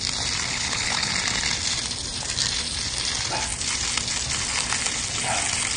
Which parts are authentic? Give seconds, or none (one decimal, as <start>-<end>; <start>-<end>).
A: 0.0-0.5; 1.1-5.8